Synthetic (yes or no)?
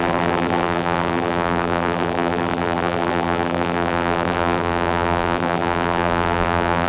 yes